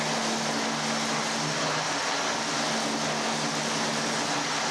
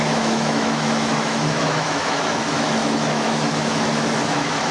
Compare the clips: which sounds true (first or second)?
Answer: first